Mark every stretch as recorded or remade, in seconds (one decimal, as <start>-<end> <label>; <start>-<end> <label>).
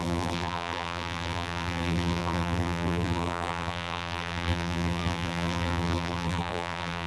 0.0-7.1 remade